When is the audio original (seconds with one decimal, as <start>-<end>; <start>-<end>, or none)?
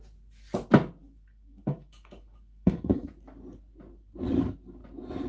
0.0-1.0; 3.1-5.3